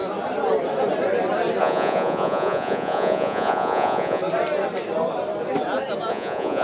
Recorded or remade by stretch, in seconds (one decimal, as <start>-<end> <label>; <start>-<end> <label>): 0.0-1.6 recorded; 1.6-4.2 remade; 4.2-6.1 recorded; 6.1-6.6 remade